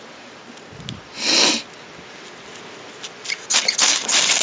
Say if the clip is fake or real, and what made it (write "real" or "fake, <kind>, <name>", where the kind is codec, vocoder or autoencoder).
real